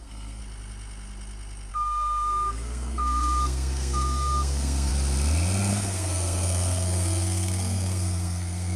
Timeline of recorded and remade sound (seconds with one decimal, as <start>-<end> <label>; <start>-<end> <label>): 0.0-0.4 remade; 0.4-1.7 recorded; 1.7-4.9 remade; 4.9-5.7 recorded; 5.7-8.8 remade